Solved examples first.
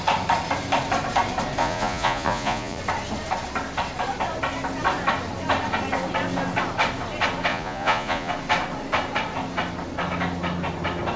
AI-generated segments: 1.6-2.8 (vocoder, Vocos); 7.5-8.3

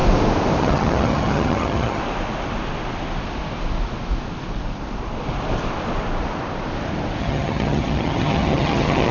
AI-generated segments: 0.6-2.0 (vocoder, HiFi-GAN); 7.2-9.1

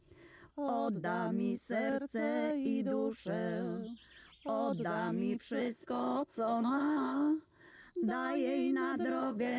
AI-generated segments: 0.0-0.5 (codec, ZipCodec); 5.6-7.7; 9.2-9.6

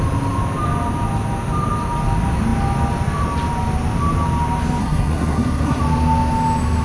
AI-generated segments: 4.8-5.8 (codec, SNAC)

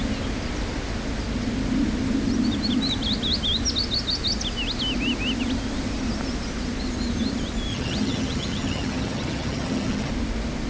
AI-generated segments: 7.7-10.1 (vocoder, HiFi-GAN)